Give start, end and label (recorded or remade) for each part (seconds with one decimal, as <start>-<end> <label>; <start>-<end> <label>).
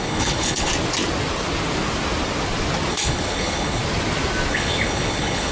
0.0-0.7 remade; 0.7-2.9 recorded; 2.9-3.8 remade; 3.8-4.5 recorded; 4.5-5.5 remade